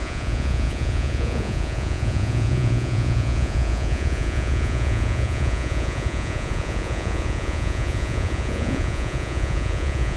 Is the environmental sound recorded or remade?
remade